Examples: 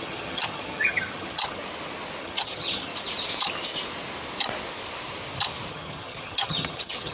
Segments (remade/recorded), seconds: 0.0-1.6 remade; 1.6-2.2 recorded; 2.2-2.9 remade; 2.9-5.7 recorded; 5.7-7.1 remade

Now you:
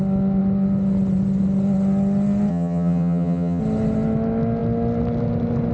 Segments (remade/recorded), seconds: 0.0-2.5 recorded; 2.5-3.6 remade; 3.6-5.7 recorded

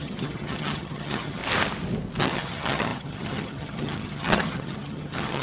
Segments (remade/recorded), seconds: 0.0-1.4 remade; 1.4-2.2 recorded; 2.2-5.4 remade

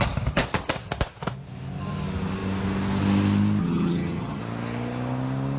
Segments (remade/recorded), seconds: 0.0-3.6 recorded; 3.6-4.4 remade; 4.4-5.6 recorded

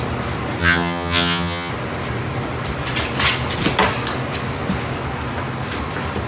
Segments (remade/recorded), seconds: 0.0-0.6 recorded; 0.6-1.7 remade; 1.7-6.3 recorded

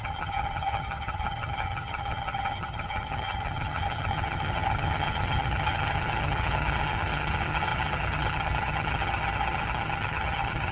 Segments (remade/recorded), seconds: 0.0-10.7 remade